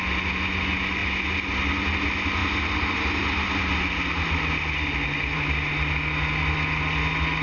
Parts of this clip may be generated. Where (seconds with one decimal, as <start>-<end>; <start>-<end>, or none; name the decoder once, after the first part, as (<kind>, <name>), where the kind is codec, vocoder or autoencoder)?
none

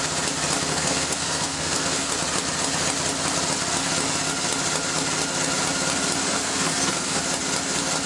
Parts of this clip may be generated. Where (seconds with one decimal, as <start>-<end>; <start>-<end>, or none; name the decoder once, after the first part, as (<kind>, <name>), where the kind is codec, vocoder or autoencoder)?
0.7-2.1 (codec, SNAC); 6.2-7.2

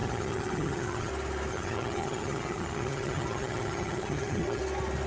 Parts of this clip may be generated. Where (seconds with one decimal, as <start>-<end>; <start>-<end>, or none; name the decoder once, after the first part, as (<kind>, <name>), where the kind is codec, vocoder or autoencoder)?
0.0-1.1 (vocoder, HiFi-GAN); 1.5-4.6

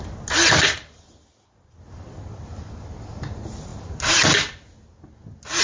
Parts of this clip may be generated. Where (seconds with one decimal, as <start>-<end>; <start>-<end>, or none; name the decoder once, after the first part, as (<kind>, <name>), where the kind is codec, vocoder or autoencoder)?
none

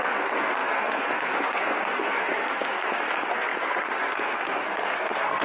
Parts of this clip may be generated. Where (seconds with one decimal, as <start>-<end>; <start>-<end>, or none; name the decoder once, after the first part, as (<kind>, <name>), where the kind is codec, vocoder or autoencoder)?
0.0-5.4 (codec, SNAC)

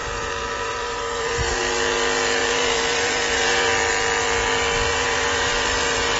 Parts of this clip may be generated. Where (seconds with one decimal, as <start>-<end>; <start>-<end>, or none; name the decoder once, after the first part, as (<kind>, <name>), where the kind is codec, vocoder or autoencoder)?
0.0-1.6 (vocoder, BigVGAN v2); 2.4-3.7; 4.9-6.2

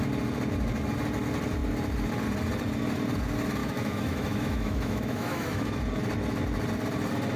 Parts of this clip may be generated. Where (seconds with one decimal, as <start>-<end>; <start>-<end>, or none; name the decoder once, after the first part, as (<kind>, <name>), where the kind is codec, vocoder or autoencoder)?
3.6-5.8 (autoencoder, DAC-VAE)

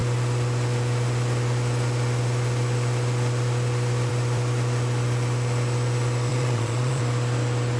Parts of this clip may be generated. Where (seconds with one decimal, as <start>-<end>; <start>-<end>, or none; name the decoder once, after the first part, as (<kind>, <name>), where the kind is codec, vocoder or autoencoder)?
6.3-7.0 (vocoder, Vocos)